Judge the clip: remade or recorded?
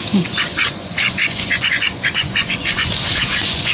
remade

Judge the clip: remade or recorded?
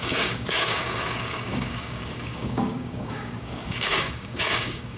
remade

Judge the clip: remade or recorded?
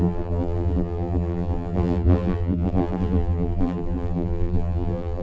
remade